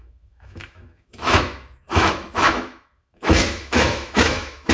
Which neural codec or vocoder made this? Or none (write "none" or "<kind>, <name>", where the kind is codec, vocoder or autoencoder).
autoencoder, DAC-VAE